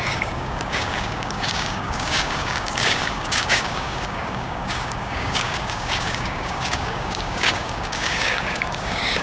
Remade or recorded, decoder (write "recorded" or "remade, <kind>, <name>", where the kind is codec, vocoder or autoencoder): remade, codec, DAC